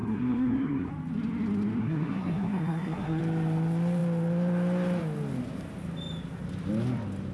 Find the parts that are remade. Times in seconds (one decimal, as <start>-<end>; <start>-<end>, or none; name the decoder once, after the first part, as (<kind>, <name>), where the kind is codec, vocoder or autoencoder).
0.0-0.9 (codec, SNAC); 1.8-3.2